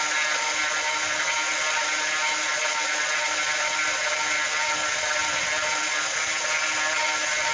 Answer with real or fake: real